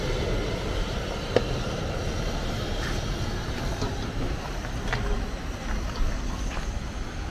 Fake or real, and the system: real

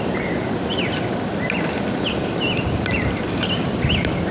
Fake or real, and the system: real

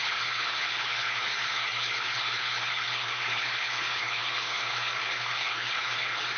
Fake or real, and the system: fake, codec, HILCodec